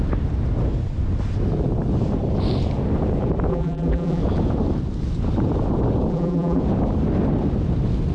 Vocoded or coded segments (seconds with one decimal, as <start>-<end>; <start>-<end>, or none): 3.5-4.2; 6.1-6.6